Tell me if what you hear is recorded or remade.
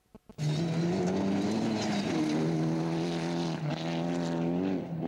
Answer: recorded